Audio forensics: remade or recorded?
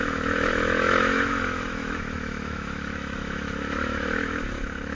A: remade